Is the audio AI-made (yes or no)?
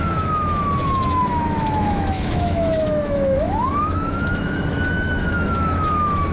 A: yes